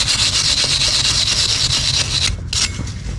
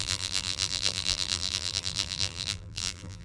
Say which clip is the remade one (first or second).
second